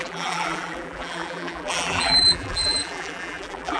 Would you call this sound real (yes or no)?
no